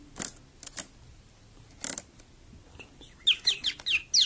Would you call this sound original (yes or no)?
yes